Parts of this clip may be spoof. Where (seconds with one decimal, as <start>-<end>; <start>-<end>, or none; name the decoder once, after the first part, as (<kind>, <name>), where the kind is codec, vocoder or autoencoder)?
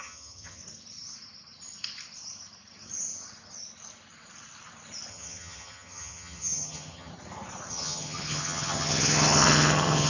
0.0-0.6 (vocoder, HiFi-GAN); 5.1-7.1; 7.7-10.1